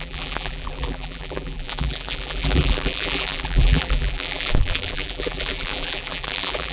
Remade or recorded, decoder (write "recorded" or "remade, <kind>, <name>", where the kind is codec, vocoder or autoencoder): remade, vocoder, BigVGAN v2